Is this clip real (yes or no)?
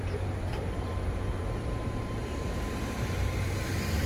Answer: no